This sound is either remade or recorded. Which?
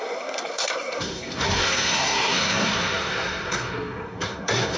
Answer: remade